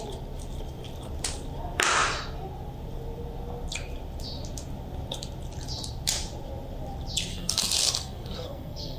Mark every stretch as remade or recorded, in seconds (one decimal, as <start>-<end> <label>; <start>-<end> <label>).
0.0-7.3 recorded; 7.3-9.0 remade